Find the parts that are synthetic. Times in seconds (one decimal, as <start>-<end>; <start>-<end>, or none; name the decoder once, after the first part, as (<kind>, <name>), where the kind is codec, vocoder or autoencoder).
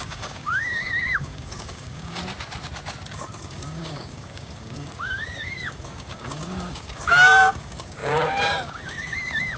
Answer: 0.0-2.2 (codec, DAC); 3.1-9.6